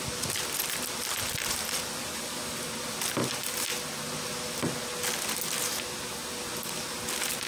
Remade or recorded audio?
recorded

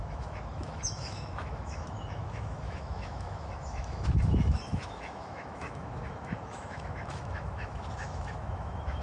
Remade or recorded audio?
remade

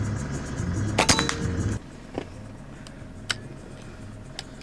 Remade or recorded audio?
recorded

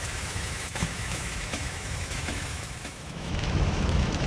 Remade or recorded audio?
remade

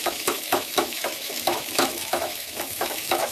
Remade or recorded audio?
remade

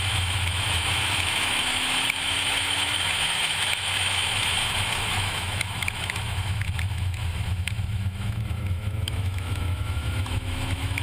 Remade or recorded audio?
remade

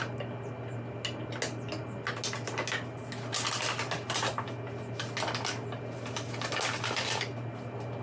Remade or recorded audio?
recorded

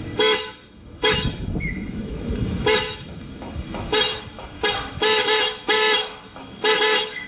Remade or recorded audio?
remade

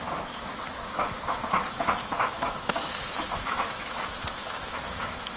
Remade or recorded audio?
remade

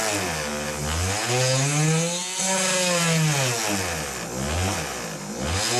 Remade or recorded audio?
recorded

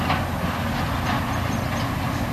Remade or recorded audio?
recorded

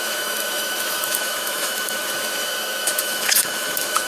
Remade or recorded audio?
remade